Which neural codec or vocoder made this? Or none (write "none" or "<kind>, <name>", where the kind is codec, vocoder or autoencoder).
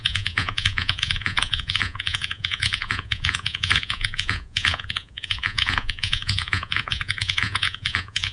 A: vocoder, Vocos